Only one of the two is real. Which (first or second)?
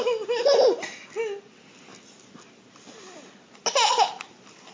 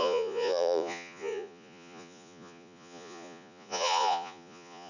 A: first